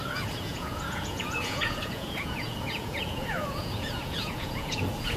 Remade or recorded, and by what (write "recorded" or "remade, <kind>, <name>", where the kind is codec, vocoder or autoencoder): remade, vocoder, Vocos